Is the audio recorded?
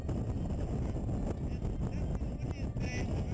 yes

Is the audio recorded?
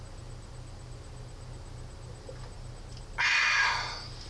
yes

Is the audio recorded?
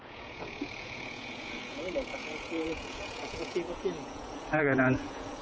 no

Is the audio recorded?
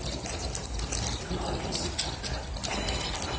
yes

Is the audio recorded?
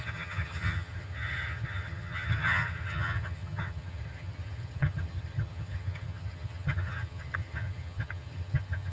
no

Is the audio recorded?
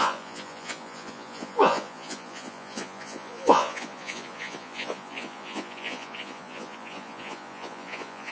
no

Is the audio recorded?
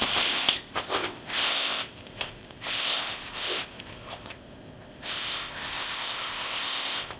no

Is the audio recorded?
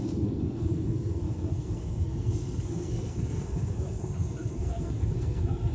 no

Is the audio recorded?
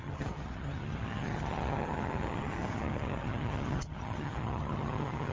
no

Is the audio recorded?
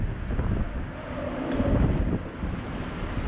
yes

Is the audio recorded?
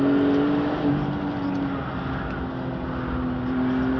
yes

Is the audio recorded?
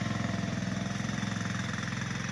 yes